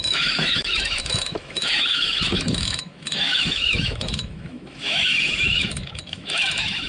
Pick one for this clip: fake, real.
fake